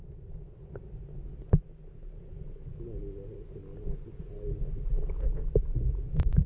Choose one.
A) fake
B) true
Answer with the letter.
B